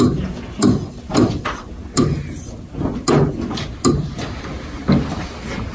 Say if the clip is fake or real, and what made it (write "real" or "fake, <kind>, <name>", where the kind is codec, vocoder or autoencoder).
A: real